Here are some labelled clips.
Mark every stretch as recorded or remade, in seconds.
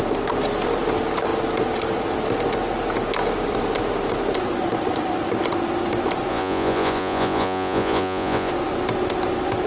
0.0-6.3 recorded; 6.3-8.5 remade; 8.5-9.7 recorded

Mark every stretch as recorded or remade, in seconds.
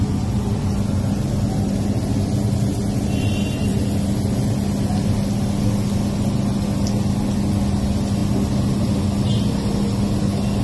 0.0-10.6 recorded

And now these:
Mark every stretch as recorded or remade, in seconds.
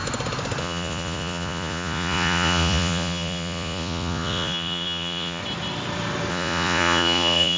0.0-0.6 recorded; 0.6-5.4 remade; 5.4-6.3 recorded; 6.3-7.6 remade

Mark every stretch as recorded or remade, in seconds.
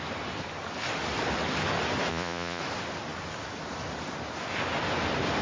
0.0-2.1 recorded; 2.1-2.6 remade; 2.6-5.4 recorded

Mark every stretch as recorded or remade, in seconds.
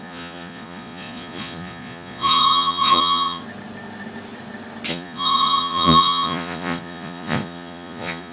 0.0-3.4 remade; 3.4-4.9 recorded; 4.9-8.3 remade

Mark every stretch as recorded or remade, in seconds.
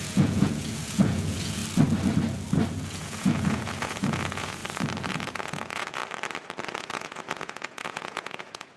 0.0-1.6 remade; 1.6-2.7 recorded; 2.7-4.6 remade; 4.6-5.1 recorded; 5.1-6.0 remade; 6.0-6.8 recorded; 6.8-8.8 remade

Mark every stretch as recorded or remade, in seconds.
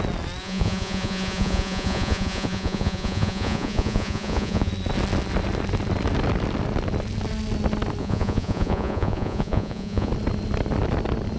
0.0-0.4 recorded; 0.4-4.7 remade; 4.7-8.0 recorded; 8.0-10.1 remade; 10.1-11.4 recorded